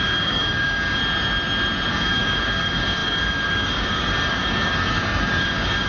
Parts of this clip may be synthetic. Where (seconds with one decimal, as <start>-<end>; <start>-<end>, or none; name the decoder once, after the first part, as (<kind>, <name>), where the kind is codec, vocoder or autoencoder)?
0.0-1.0 (codec, DAC); 1.9-5.9

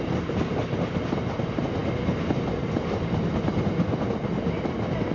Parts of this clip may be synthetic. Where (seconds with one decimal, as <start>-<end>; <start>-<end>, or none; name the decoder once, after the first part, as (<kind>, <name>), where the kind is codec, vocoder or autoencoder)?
none